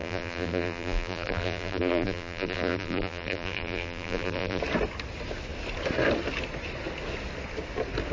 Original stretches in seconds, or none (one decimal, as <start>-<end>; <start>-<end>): 4.6-8.1